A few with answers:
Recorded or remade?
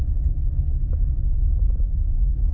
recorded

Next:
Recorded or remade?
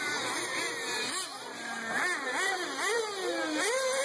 recorded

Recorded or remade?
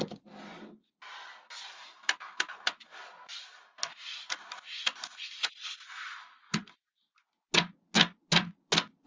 recorded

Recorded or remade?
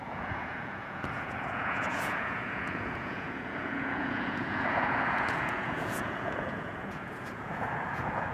remade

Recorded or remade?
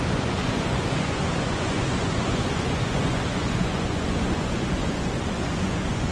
remade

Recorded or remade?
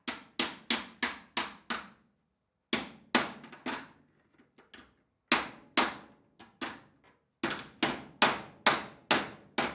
recorded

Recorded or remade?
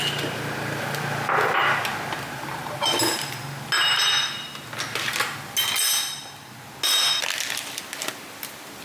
recorded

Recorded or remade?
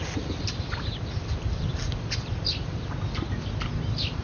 recorded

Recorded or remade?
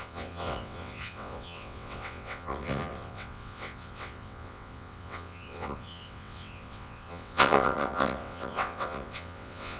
remade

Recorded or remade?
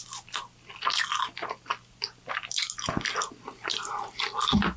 recorded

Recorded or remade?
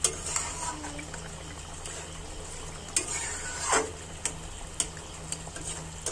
recorded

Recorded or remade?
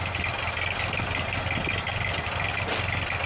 recorded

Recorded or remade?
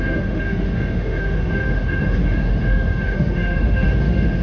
remade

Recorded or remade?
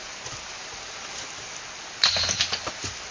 recorded